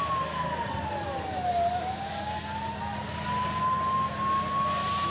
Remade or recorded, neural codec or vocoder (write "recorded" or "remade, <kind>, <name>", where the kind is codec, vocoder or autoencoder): recorded